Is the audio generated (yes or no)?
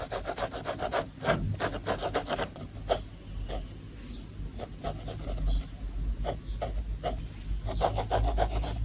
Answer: no